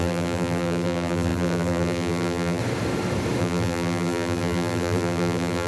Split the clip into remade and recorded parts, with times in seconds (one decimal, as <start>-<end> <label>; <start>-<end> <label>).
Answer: 0.0-2.6 remade; 2.6-3.4 recorded; 3.4-5.7 remade